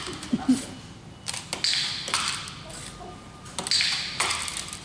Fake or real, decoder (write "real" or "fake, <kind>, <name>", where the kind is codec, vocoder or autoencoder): real